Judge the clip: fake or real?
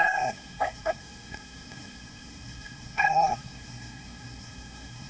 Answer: fake